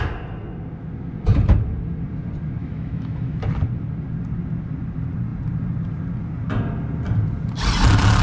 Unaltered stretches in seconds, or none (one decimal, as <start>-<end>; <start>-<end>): 0.0-2.6; 3.4-8.2